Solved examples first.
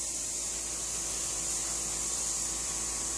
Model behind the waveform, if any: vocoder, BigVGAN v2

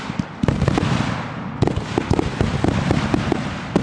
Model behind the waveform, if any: none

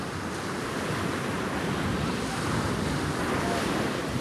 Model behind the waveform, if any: none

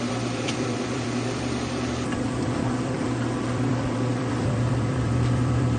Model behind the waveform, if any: vocoder, BigVGAN v2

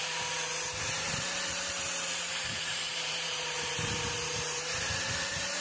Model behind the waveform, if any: vocoder, BigVGAN v2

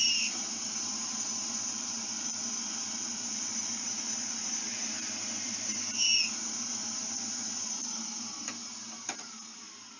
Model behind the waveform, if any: vocoder, BigVGAN v2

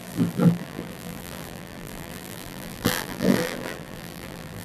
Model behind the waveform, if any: vocoder, BigVGAN v2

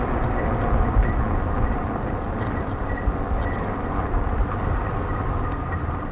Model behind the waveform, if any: vocoder, BigVGAN v2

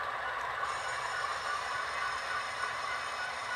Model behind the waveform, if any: vocoder, BigVGAN v2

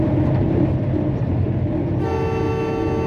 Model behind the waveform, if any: none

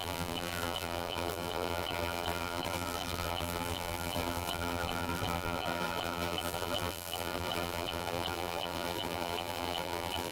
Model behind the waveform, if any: vocoder, BigVGAN v2